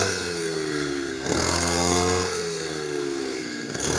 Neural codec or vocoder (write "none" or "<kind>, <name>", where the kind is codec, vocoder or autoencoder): codec, SNAC